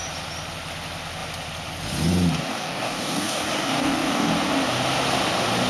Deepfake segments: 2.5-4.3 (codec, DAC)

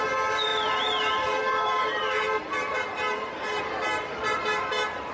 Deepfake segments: 0.5-3.6 (vocoder, BigVGAN v2)

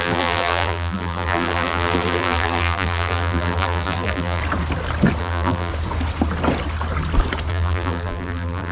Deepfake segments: 0.0-4.4 (vocoder, BigVGAN v2); 5.2-5.7; 7.5-8.7

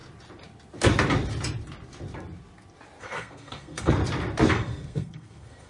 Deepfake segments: 3.0-4.0 (codec, SNAC); 4.5-5.7

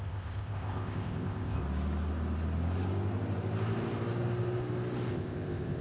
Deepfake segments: 0.0-1.6 (codec, ZipCodec); 5.1-5.8

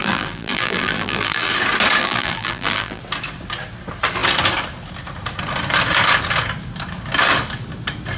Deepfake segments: 0.0-1.5 (vocoder, BigVGAN v2); 2.0-3.0

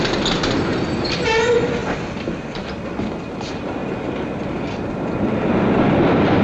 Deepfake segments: none

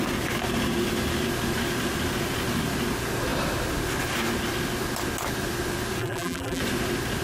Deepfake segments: 6.0-6.6 (vocoder, BigVGAN v2)